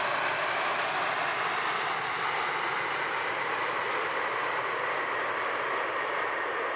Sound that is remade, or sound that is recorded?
recorded